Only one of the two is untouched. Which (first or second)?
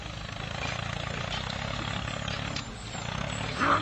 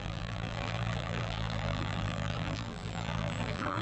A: first